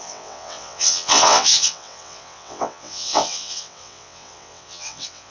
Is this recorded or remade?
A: remade